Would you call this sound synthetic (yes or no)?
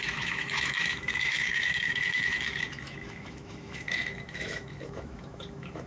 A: yes